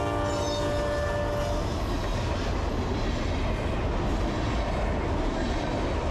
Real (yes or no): yes